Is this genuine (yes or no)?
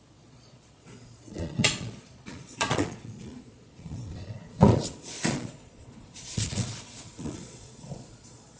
no